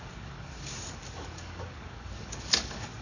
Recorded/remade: remade